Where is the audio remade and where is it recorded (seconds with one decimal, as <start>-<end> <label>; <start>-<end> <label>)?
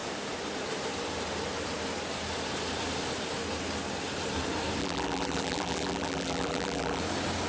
0.0-4.8 recorded; 4.8-7.0 remade; 7.0-7.5 recorded